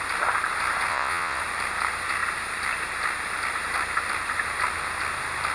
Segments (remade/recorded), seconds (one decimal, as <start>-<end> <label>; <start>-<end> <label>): 0.0-0.9 recorded; 0.9-1.4 remade; 1.4-5.5 recorded